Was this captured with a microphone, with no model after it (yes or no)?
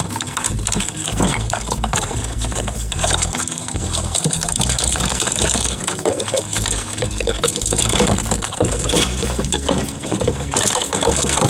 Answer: no